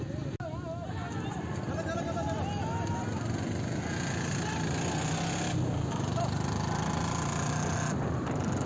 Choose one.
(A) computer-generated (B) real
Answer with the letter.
B